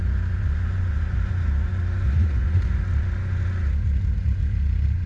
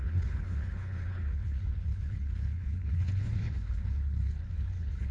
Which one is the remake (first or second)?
second